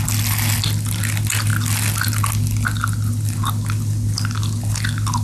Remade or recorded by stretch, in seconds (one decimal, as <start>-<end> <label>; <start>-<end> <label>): 0.0-5.2 recorded